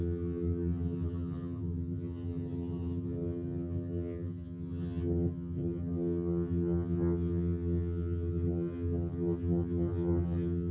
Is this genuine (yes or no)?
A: no